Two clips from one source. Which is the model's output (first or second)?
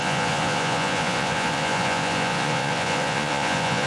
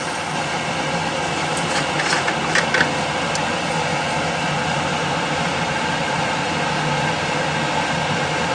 first